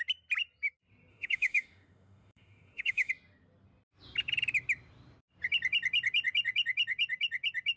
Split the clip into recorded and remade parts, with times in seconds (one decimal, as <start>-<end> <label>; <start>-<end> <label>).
0.0-1.1 recorded; 1.1-3.1 remade; 3.1-7.8 recorded